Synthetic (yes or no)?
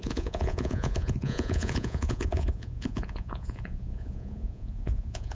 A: yes